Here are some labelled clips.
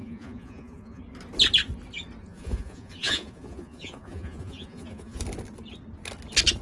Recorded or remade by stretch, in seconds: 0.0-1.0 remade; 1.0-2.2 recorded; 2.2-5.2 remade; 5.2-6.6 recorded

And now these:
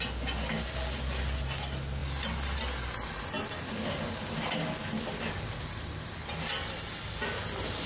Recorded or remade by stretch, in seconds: 0.0-7.9 recorded

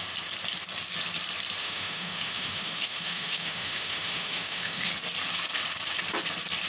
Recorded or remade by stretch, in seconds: 0.0-1.6 recorded; 1.6-4.9 remade; 4.9-6.7 recorded

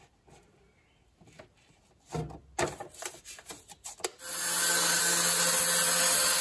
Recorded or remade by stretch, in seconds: 0.0-6.4 recorded